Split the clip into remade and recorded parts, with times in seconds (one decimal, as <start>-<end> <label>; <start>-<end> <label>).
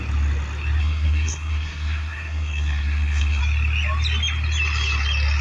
0.0-0.8 recorded; 0.8-3.4 remade; 3.4-5.4 recorded